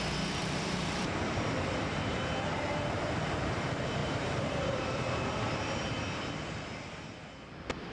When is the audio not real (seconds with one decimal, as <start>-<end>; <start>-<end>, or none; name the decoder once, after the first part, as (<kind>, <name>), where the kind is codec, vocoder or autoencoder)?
0.4-3.6 (vocoder, BigVGAN v2); 4.0-5.2